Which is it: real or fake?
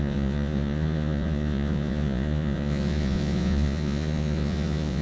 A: fake